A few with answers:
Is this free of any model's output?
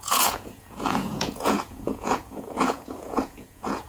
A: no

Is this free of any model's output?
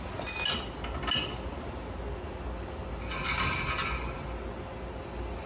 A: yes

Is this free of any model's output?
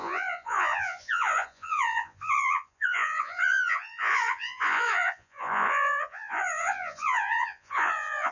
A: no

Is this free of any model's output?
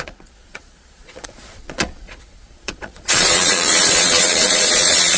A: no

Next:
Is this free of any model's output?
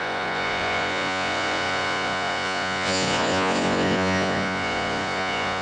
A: no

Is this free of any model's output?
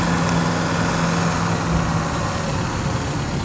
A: yes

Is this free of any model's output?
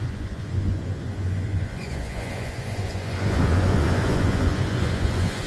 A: no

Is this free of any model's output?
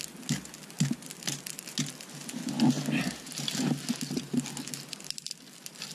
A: yes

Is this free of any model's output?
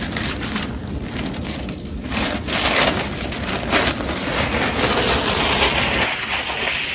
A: yes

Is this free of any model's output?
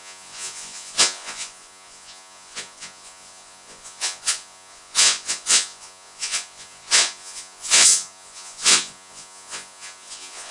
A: no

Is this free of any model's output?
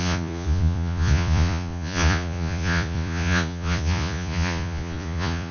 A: no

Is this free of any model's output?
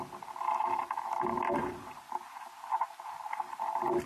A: yes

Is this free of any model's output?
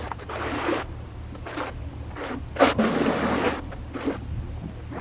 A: yes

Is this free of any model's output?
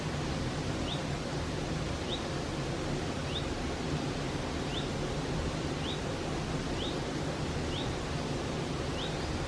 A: yes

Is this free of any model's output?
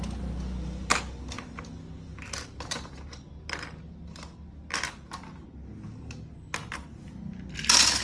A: yes